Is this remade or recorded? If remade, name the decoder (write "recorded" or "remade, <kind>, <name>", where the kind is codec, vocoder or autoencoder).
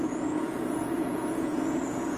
remade, vocoder, Vocos